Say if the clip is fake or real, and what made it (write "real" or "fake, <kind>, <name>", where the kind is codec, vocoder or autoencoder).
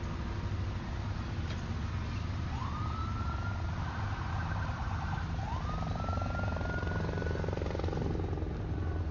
real